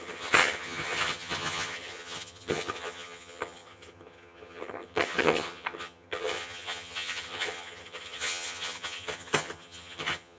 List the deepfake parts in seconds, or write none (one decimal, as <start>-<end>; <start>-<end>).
0.0-10.4